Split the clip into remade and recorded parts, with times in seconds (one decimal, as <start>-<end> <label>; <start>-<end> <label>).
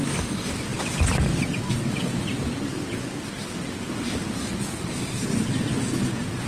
0.0-6.5 recorded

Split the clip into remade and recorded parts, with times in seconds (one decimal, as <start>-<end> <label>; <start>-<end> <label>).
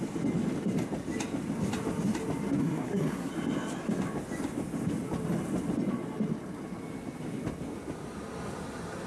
0.0-2.6 recorded; 2.6-3.3 remade; 3.3-9.1 recorded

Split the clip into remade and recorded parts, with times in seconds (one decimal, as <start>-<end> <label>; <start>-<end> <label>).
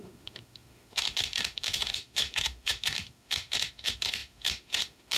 0.0-5.2 remade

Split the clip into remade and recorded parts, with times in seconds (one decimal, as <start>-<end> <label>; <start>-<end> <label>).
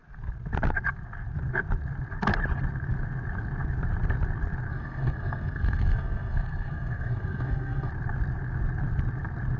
0.0-4.7 recorded; 4.7-7.9 remade; 7.9-9.6 recorded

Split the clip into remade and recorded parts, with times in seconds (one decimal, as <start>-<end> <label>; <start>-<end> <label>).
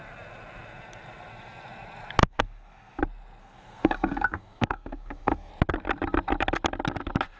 0.0-2.2 recorded; 2.2-3.0 remade; 3.0-3.4 recorded; 3.4-5.5 remade; 5.5-7.4 recorded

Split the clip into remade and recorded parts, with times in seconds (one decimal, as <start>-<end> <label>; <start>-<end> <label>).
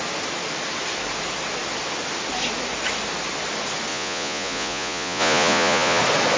0.0-3.9 recorded; 3.9-6.0 remade; 6.0-6.4 recorded